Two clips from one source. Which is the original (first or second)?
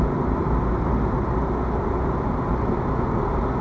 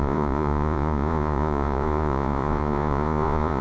first